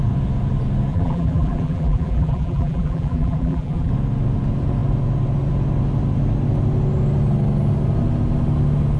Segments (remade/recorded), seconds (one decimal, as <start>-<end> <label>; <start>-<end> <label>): 0.0-0.9 recorded; 0.9-3.9 remade; 3.9-9.0 recorded